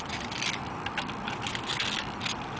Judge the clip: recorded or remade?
recorded